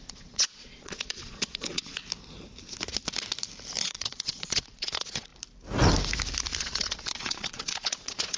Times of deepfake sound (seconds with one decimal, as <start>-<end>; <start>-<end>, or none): 0.0-2.0; 3.8-5.3; 6.6-8.4